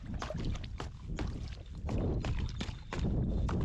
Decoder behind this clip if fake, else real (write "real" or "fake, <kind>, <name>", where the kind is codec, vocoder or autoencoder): real